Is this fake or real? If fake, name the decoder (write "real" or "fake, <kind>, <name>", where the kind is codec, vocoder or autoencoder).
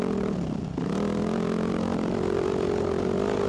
real